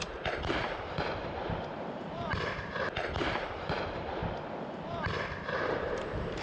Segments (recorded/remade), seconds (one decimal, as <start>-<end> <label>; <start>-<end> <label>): 0.0-4.2 remade; 4.2-5.7 recorded; 5.7-6.4 remade